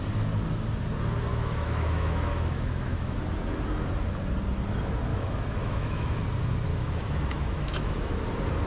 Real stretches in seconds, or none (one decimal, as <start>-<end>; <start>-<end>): 0.0-1.3; 3.2-5.1; 6.2-6.7; 8.2-8.7